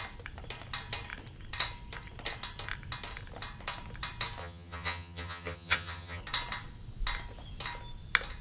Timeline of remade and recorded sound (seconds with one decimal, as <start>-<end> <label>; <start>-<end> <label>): 0.0-4.4 recorded; 4.4-6.2 remade; 6.2-8.4 recorded